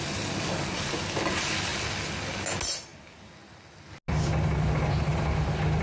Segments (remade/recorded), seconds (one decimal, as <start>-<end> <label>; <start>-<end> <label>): 0.0-5.8 recorded